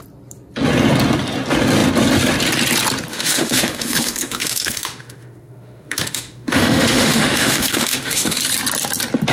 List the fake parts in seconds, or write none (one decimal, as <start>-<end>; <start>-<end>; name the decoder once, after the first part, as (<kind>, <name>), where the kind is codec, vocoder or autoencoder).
3.1-8.4 (autoencoder, DAC-VAE)